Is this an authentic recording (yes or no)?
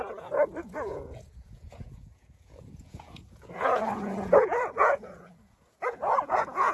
no